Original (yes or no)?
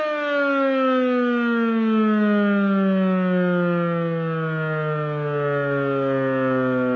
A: yes